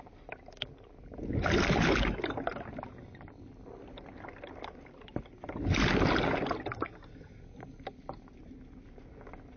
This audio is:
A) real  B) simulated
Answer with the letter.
A